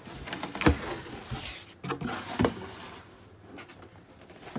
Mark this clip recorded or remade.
recorded